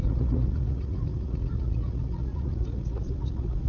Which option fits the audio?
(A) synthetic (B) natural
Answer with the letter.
A